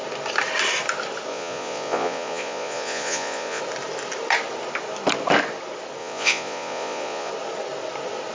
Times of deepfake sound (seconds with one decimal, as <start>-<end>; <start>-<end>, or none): 1.3-3.6; 6.0-7.3